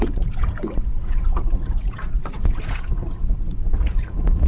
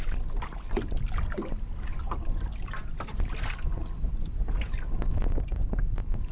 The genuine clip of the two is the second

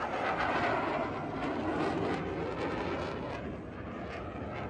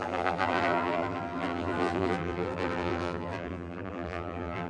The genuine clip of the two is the first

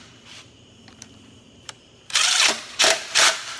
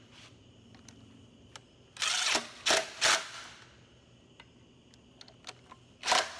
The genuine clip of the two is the second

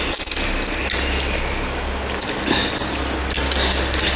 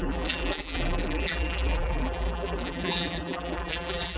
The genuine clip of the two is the first